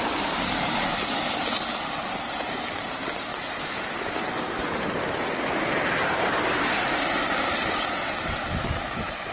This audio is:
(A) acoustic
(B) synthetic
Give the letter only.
B